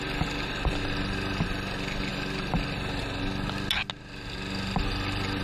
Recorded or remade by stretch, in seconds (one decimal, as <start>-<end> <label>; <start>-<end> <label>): 0.0-5.4 recorded